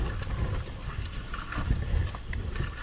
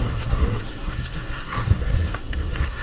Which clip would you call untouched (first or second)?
first